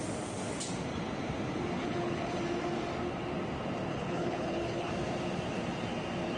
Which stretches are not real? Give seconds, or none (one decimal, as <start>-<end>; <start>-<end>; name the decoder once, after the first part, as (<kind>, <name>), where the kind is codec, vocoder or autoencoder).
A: 1.8-2.4 (codec, HILCodec); 3.9-4.9

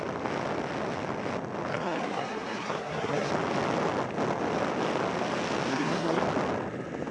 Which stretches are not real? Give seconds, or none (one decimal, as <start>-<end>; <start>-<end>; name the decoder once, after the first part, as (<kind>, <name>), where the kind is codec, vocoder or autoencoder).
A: 1.7-3.3 (codec, SNAC); 5.7-6.2

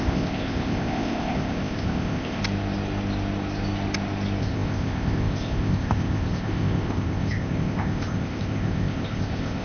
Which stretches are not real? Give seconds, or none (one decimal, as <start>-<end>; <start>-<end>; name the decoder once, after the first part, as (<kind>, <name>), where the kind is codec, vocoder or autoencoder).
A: 0.0-2.4 (codec, ZipCodec); 4.4-9.6

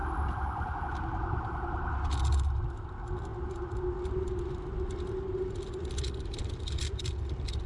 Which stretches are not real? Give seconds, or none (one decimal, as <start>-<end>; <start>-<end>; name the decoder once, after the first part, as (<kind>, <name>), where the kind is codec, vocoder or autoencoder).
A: 0.0-0.8 (vocoder, BigVGAN v2)

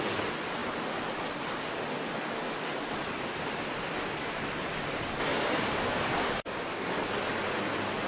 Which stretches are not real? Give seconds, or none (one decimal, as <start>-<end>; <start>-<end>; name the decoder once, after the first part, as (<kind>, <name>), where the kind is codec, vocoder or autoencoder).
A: 5.3-6.5 (codec, DAC)

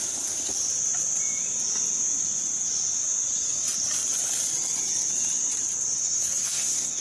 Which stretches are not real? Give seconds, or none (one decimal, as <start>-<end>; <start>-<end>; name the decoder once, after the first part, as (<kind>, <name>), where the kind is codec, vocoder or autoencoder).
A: 6.0-7.0 (codec, SNAC)

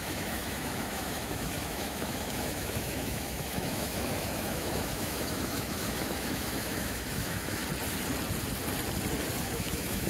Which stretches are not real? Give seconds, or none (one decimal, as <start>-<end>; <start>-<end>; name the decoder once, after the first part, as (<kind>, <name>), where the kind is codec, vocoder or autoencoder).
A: 0.0-7.6 (autoencoder, DAC-VAE); 9.4-10.1

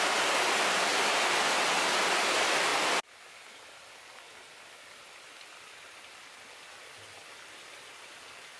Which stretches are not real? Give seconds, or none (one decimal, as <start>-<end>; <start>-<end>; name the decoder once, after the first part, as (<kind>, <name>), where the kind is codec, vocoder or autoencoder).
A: none